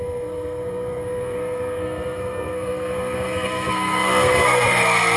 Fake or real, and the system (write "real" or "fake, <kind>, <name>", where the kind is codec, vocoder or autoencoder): fake, codec, SNAC